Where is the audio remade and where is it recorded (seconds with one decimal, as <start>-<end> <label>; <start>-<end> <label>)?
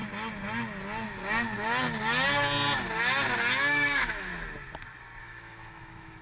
0.0-3.7 recorded; 3.7-4.3 remade; 4.3-5.2 recorded; 5.2-6.2 remade